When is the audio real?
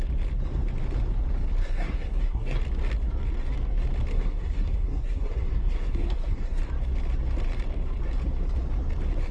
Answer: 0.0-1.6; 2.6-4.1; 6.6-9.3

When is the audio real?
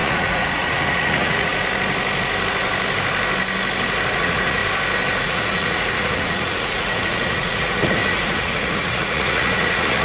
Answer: 1.5-4.1; 4.6-5.2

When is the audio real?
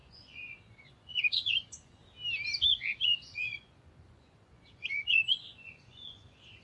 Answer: 2.0-2.7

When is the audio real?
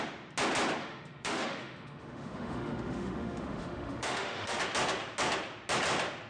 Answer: 0.0-0.8; 4.6-6.3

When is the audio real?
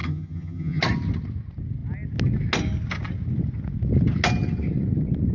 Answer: 0.8-5.3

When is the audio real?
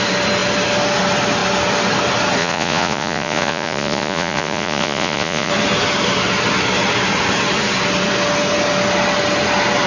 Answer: 0.0-2.4; 5.5-9.9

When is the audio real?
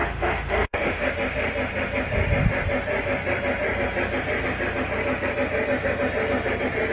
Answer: 1.1-6.9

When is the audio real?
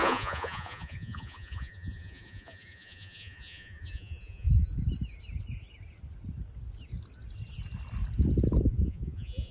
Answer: 4.7-8.7